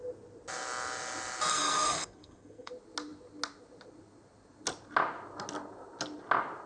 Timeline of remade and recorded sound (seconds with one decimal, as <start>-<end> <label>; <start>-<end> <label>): 0.0-1.5 recorded; 1.5-2.7 remade; 2.7-6.7 recorded